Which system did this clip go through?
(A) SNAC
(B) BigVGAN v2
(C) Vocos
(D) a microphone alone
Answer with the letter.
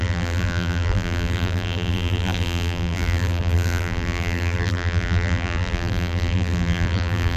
B